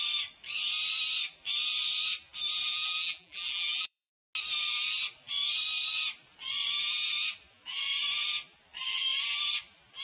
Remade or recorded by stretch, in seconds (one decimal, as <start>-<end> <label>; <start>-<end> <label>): 0.0-2.7 recorded; 2.7-4.1 remade; 4.1-10.0 recorded